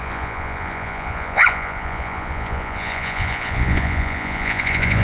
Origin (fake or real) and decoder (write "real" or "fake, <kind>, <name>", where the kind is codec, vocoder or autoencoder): fake, vocoder, Vocos